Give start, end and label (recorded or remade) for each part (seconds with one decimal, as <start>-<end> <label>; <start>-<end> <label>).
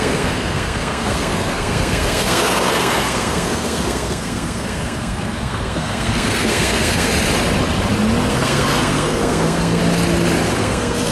0.0-7.1 remade; 7.1-8.3 recorded; 8.3-9.8 remade; 9.8-10.6 recorded; 10.6-11.1 remade